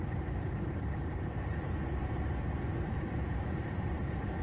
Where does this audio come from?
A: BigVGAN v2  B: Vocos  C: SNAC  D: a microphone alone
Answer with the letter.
A